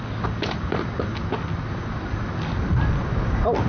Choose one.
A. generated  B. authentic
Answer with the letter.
B